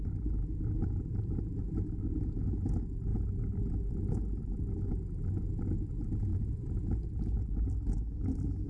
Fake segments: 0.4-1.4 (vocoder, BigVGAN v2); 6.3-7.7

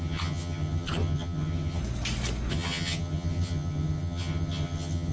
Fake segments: 0.0-1.8 (vocoder, HiFi-GAN); 2.5-5.1

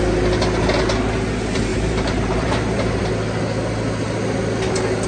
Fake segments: 1.7-3.0 (vocoder, BigVGAN v2)

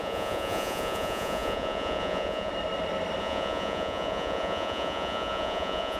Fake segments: 0.0-2.5 (vocoder, Vocos); 3.2-6.0

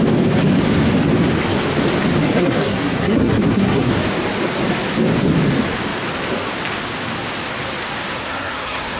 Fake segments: 2.2-3.9 (codec, SNAC); 8.1-9.0

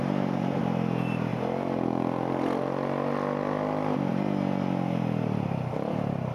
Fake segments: 0.0-0.6 (vocoder, BigVGAN v2)

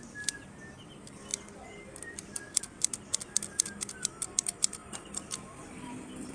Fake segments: none

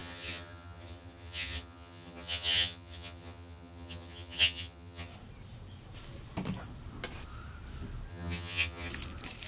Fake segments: 0.0-5.1 (vocoder, HiFi-GAN); 8.1-8.9